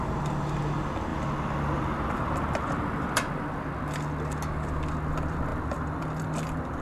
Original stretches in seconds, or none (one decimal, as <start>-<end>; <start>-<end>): 0.0-1.1; 3.6-5.5